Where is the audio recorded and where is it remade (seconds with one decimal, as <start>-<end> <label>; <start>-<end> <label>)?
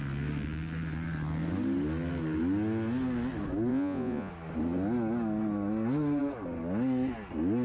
0.0-3.7 recorded; 3.7-4.3 remade; 4.3-7.6 recorded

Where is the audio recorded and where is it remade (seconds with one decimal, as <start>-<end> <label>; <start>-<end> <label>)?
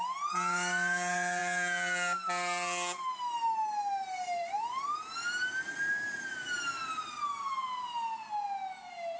0.0-9.2 recorded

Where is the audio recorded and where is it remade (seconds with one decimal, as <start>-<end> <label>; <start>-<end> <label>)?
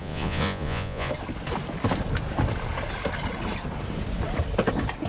0.0-1.1 remade; 1.1-5.1 recorded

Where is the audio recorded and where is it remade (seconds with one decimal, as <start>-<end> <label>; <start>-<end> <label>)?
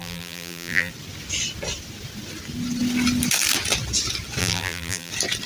0.0-0.9 remade; 0.9-4.4 recorded; 4.4-5.1 remade; 5.1-5.5 recorded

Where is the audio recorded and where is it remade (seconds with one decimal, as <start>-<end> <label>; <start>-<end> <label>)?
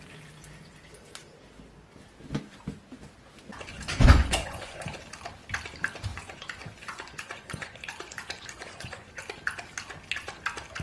0.0-3.7 recorded; 3.7-5.0 remade; 5.0-6.1 recorded; 6.1-9.1 remade; 9.1-10.8 recorded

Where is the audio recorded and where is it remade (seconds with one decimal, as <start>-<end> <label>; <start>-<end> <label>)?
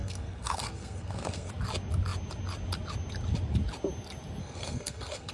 0.0-1.5 remade; 1.5-4.4 recorded; 4.4-5.3 remade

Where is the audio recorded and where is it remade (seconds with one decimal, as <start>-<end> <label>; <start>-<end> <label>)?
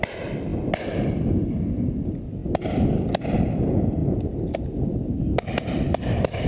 0.0-6.5 recorded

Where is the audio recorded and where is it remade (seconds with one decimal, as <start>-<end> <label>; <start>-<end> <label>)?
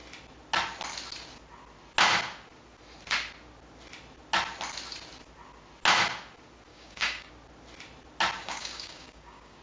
0.0-6.7 recorded; 6.7-7.3 remade; 7.3-8.4 recorded; 8.4-9.6 remade